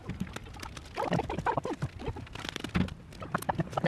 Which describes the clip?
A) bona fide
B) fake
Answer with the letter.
A